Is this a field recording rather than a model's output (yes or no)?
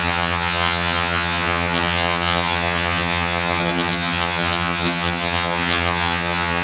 no